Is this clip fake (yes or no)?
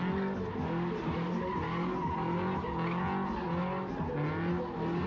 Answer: no